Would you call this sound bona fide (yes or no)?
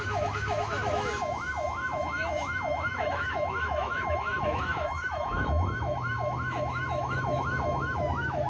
no